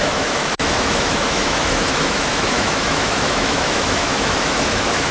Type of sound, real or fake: fake